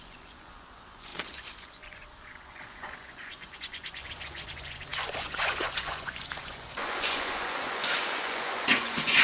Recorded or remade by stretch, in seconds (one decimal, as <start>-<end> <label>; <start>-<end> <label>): 0.0-9.2 remade

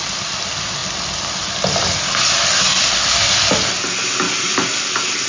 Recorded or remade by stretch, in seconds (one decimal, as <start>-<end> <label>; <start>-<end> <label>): 0.0-5.3 recorded

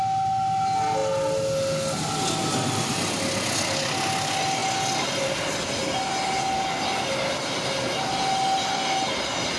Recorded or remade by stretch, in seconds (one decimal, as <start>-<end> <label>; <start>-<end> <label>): 0.0-9.6 recorded

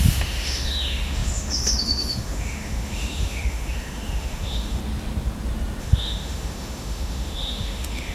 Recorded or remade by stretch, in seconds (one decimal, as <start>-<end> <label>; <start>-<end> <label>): 0.0-4.8 remade; 4.8-5.8 recorded; 5.8-8.1 remade